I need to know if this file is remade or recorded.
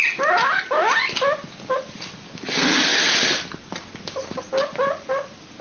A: recorded